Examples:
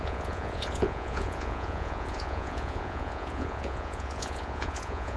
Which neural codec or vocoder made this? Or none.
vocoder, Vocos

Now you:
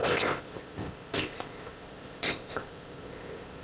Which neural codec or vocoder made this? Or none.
codec, ZipCodec